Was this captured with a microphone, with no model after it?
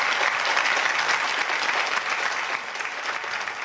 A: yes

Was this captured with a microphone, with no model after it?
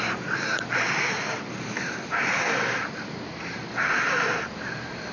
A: no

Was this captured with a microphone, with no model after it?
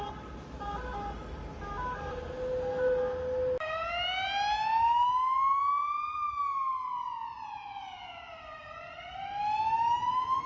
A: yes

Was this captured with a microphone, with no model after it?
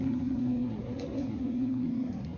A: no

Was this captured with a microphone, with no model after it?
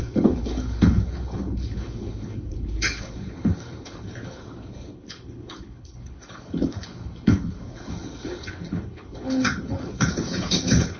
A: no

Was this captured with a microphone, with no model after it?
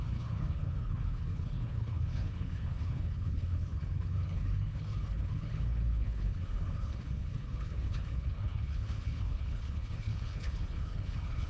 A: no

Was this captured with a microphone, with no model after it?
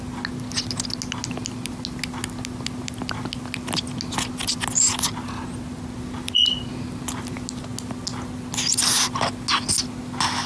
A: yes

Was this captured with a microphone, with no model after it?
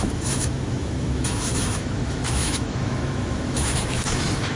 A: no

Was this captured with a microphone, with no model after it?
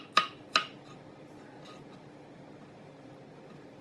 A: yes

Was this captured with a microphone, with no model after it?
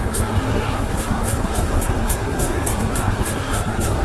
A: no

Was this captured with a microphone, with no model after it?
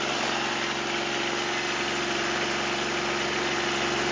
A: yes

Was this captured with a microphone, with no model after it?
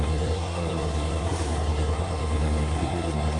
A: no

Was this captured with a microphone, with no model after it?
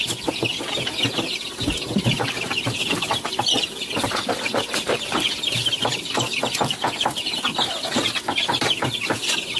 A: no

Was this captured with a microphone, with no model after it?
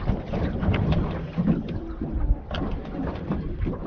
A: no